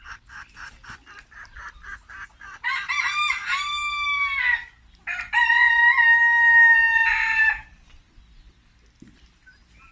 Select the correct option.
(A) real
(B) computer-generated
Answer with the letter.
A